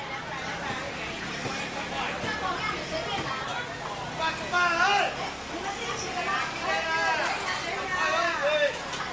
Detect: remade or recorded recorded